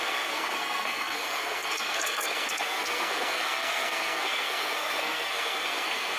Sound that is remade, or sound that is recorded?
remade